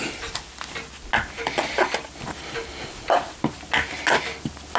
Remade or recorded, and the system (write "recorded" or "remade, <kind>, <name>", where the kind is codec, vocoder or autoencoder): recorded